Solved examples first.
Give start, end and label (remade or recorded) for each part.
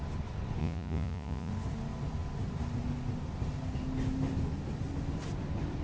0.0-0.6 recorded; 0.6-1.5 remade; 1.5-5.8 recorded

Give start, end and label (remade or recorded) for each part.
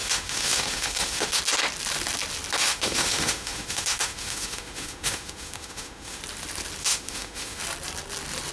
0.0-1.4 remade; 1.4-2.6 recorded; 2.6-6.2 remade; 6.2-6.8 recorded; 6.8-7.6 remade; 7.6-8.5 recorded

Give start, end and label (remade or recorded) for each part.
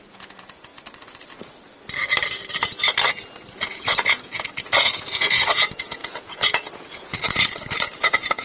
0.0-0.7 remade; 0.7-3.6 recorded; 3.6-8.4 remade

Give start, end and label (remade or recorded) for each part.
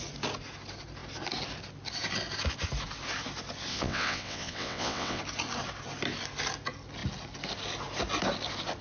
0.0-3.7 recorded; 3.7-5.2 remade; 5.2-8.8 recorded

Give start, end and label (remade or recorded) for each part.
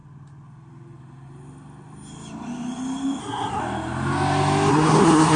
0.0-3.2 recorded; 3.2-3.6 remade; 3.6-4.7 recorded; 4.7-5.4 remade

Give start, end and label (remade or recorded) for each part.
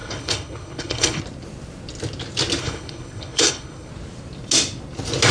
0.0-1.2 remade; 1.2-2.6 recorded; 2.6-3.9 remade; 3.9-5.3 recorded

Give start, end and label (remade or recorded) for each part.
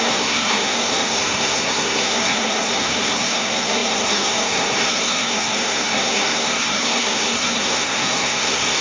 0.0-8.8 remade